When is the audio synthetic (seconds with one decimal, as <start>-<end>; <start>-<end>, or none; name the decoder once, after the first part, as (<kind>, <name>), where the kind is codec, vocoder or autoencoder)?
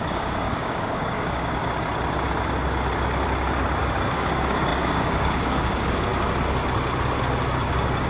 0.0-1.6 (codec, DAC); 3.8-6.1